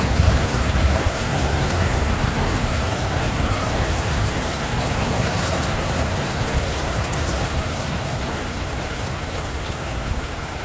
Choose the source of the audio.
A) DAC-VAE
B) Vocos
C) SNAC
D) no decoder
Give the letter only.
C